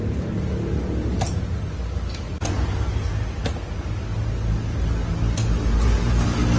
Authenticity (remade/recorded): recorded